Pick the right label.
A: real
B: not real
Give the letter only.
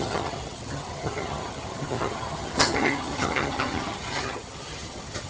B